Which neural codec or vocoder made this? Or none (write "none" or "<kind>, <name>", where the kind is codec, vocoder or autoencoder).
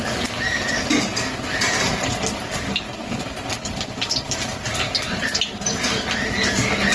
vocoder, BigVGAN v2